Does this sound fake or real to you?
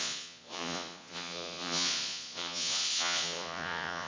fake